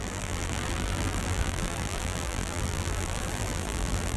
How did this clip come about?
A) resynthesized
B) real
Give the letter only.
A